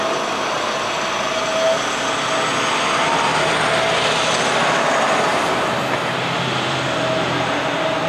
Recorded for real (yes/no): yes